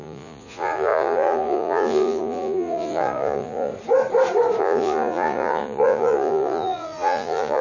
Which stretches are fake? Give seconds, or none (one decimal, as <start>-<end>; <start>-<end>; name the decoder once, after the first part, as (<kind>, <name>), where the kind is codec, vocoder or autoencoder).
0.0-3.7 (vocoder, Vocos); 4.6-7.6